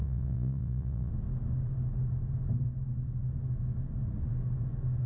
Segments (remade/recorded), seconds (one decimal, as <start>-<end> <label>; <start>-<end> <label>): 0.0-1.1 remade; 1.1-5.1 recorded

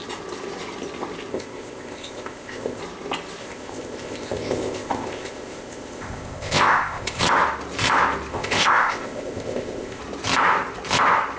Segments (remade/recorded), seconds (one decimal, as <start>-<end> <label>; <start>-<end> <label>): 0.0-1.3 recorded; 1.3-2.8 remade; 2.8-3.4 recorded; 3.4-7.2 remade; 7.2-8.3 recorded; 8.3-10.0 remade; 10.0-11.4 recorded

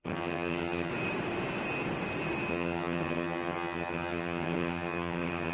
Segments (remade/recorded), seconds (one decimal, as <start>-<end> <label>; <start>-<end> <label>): 0.0-0.9 remade; 0.9-2.5 recorded; 2.5-5.5 remade

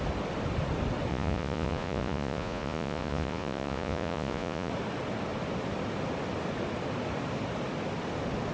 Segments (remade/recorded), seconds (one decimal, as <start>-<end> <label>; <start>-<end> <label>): 0.0-1.1 recorded; 1.1-4.7 remade; 4.7-8.5 recorded

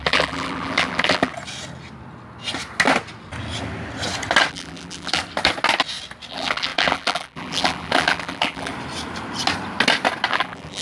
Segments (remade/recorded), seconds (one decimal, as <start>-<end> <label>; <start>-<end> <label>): 0.0-1.3 remade; 1.3-4.5 recorded; 4.5-5.2 remade; 5.2-6.3 recorded; 6.3-8.7 remade; 8.7-10.3 recorded; 10.3-10.8 remade

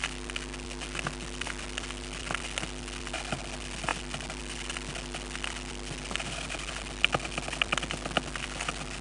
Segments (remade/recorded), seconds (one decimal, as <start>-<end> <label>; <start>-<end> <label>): 0.0-9.0 recorded

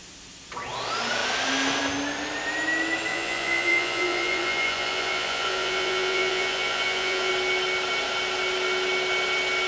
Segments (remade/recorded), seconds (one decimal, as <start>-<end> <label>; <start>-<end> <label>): 0.0-3.1 recorded; 3.1-7.3 remade; 7.3-9.7 recorded

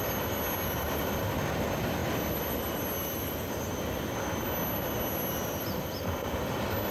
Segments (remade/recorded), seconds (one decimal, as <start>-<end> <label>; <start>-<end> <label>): 0.0-6.9 recorded